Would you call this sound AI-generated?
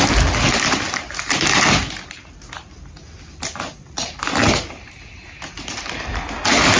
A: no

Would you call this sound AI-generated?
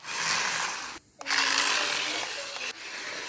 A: no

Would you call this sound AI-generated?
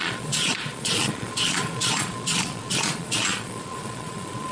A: yes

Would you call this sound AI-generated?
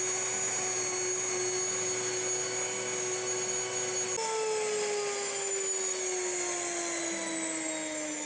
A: no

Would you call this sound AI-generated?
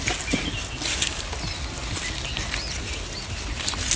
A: no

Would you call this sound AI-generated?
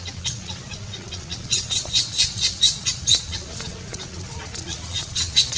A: yes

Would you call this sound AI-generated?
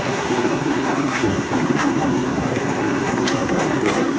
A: yes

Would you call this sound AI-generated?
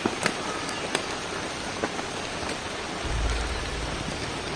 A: no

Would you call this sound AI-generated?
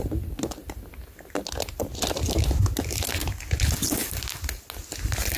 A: no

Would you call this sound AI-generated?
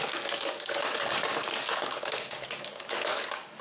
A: yes